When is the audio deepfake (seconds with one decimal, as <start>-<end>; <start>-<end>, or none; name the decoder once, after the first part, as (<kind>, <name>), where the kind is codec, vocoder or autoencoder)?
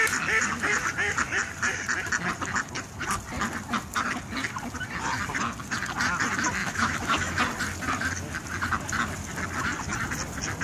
6.6-7.4 (autoencoder, DAC-VAE)